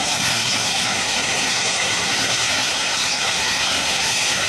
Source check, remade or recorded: remade